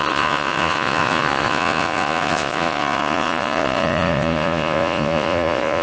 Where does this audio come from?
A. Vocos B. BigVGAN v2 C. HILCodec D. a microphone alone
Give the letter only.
A